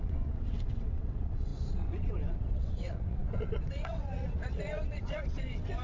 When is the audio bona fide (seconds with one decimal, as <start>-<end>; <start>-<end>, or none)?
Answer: none